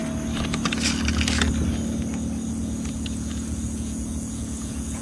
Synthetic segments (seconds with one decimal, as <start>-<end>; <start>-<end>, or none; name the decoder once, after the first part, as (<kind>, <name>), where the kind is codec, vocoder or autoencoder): 2.6-5.0 (vocoder, Vocos)